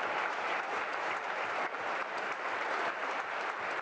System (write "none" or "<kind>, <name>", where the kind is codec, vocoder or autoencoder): vocoder, BigVGAN v2